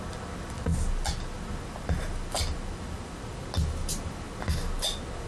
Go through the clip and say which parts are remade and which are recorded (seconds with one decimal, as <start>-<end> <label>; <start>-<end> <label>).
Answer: 0.0-5.3 recorded